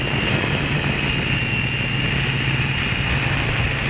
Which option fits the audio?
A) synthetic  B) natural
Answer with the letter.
B